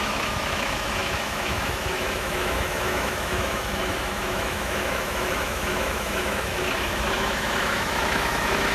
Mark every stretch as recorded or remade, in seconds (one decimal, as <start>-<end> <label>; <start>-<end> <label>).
0.0-8.7 remade